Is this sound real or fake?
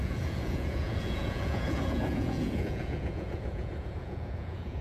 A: fake